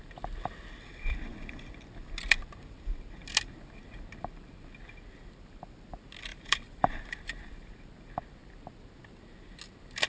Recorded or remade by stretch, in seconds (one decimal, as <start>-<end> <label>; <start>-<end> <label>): 0.0-6.3 recorded; 6.3-7.7 remade; 7.7-10.1 recorded